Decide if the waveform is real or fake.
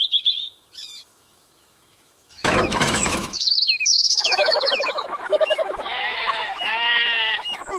fake